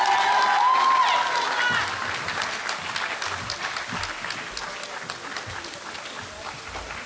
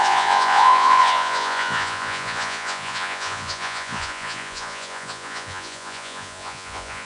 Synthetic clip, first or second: second